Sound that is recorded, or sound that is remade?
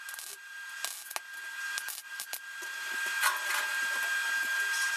recorded